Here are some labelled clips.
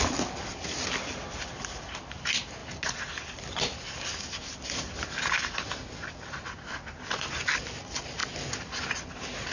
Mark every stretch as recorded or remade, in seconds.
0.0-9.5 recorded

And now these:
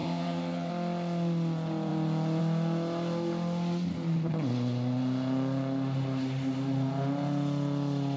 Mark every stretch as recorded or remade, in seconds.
0.0-0.7 remade; 0.7-8.2 recorded

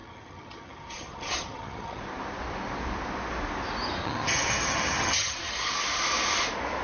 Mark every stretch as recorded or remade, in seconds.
0.0-2.0 remade; 2.0-4.0 recorded; 4.0-5.7 remade; 5.7-6.8 recorded

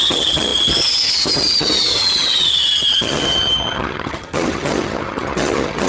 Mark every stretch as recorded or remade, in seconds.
0.0-5.9 remade

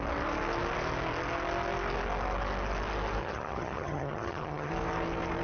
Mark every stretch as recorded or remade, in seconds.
0.0-3.2 recorded; 3.2-4.7 remade; 4.7-5.4 recorded